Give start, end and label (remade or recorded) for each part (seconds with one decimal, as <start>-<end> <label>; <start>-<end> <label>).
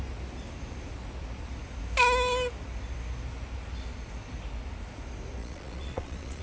0.0-5.4 recorded; 5.4-6.4 remade